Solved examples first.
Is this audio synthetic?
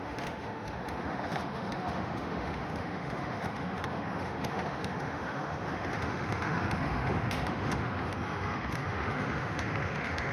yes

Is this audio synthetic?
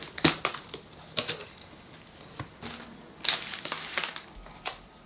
no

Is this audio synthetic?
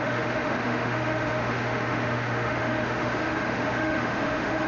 yes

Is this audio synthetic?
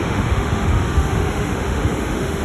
yes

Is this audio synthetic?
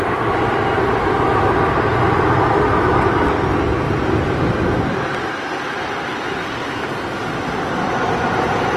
no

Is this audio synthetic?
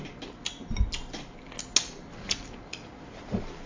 no